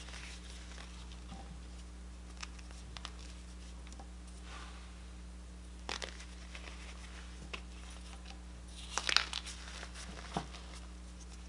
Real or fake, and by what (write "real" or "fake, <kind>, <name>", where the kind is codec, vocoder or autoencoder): real